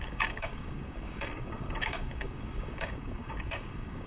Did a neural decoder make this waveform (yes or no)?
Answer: yes